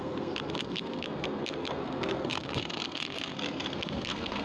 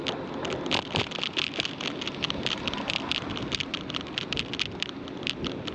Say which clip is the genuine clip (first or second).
second